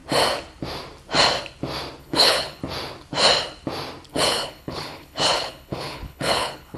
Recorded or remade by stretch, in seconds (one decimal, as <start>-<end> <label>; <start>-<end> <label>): 0.0-2.0 recorded; 2.0-2.6 remade; 2.6-4.1 recorded; 4.1-6.8 remade